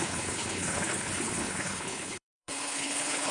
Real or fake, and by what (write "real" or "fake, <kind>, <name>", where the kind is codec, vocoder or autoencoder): fake, codec, HILCodec